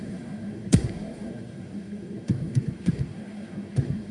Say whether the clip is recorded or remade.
remade